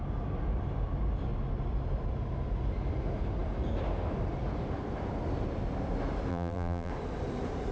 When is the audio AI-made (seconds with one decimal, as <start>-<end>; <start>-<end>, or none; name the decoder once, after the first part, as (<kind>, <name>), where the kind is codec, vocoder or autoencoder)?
6.3-6.9 (vocoder, BigVGAN v2)